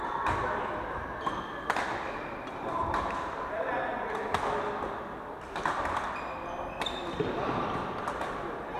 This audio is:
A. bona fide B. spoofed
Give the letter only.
A